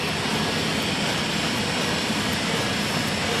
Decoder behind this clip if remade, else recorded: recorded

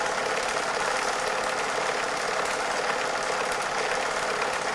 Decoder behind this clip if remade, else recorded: recorded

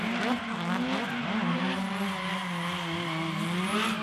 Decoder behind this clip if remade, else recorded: recorded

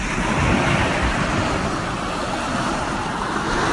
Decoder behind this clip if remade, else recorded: recorded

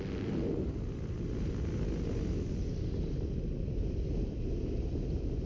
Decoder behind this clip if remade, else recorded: recorded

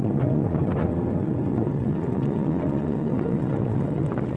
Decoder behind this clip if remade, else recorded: remade, vocoder, WaveNeXt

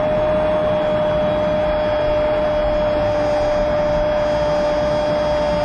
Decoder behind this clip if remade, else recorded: recorded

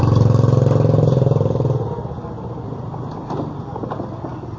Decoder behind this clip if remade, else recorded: recorded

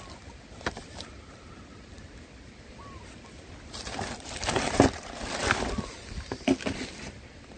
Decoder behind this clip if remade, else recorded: remade, vocoder, BigVGAN v2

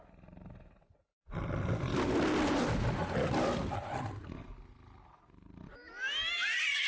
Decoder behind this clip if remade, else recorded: recorded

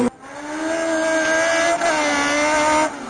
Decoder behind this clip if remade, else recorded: recorded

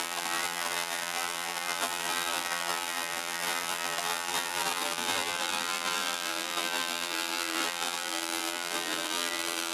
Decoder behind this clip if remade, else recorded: remade, vocoder, BigVGAN v2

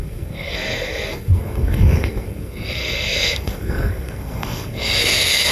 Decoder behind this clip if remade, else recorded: remade, codec, SNAC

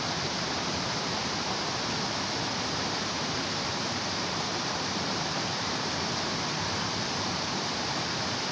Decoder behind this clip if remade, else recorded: remade, vocoder, BigVGAN v2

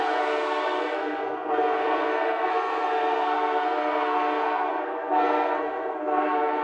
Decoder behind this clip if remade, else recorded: remade, codec, SNAC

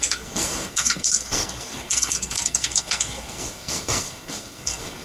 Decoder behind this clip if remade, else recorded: remade, codec, SNAC